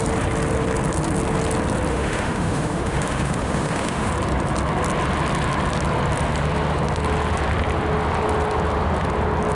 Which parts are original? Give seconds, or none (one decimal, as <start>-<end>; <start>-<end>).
0.0-1.9; 4.1-9.5